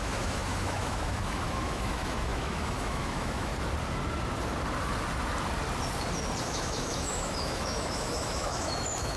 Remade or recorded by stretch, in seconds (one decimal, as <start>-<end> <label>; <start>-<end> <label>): 0.0-3.5 remade; 3.5-6.4 recorded; 6.4-9.2 remade